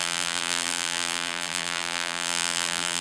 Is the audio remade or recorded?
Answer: remade